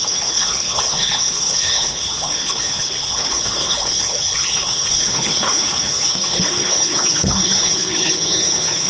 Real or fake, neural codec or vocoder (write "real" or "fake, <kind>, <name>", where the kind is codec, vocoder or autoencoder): fake, codec, HILCodec